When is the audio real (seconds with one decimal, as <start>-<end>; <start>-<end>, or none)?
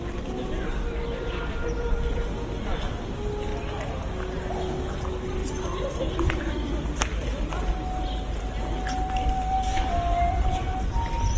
0.0-5.4; 6.0-11.4